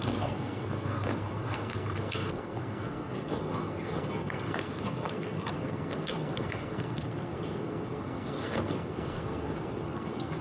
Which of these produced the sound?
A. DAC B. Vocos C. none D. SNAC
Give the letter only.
D